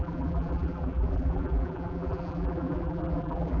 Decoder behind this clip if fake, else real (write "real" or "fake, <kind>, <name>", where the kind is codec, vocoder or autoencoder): fake, vocoder, BigVGAN v2